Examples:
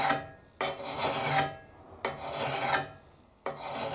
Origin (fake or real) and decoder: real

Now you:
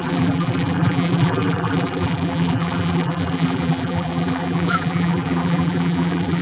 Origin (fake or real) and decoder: fake, vocoder, BigVGAN v2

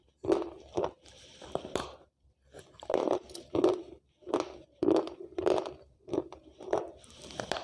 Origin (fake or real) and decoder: fake, vocoder, BigVGAN v2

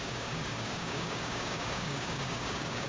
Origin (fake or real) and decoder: fake, codec, DAC